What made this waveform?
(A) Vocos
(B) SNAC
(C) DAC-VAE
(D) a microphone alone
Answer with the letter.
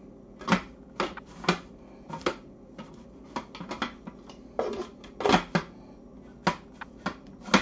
D